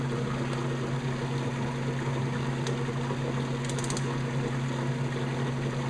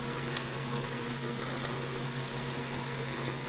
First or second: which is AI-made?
second